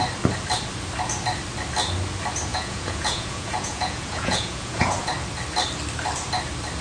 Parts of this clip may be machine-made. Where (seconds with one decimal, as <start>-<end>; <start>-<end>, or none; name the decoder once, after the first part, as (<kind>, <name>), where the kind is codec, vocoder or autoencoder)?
2.5-5.1 (vocoder, Vocos)